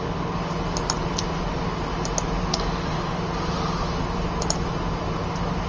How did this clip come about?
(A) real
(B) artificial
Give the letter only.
A